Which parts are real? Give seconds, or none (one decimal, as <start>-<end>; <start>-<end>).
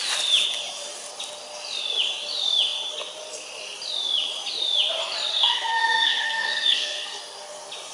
0.0-5.3; 7.2-7.9